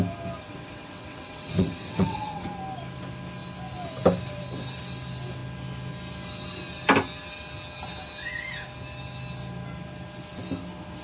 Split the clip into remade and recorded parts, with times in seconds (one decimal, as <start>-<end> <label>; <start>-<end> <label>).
0.0-0.4 recorded; 0.4-2.5 remade; 2.5-11.0 recorded